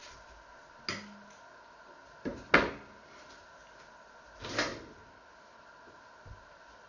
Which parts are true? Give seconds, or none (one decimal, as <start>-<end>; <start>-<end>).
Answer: 0.0-6.9